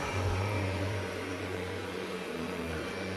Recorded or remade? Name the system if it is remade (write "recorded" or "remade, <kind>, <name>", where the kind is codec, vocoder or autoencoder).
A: remade, vocoder, Vocos